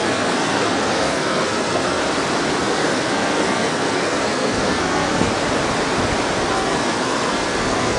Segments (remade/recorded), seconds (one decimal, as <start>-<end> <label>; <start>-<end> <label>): 0.0-2.0 remade; 2.0-2.6 recorded; 2.6-5.3 remade; 5.3-6.5 recorded; 6.5-8.0 remade